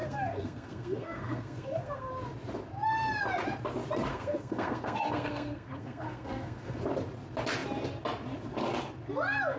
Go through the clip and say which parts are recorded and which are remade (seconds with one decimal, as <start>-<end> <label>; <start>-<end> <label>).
0.0-2.1 remade; 2.1-4.1 recorded; 4.1-6.8 remade; 6.8-9.6 recorded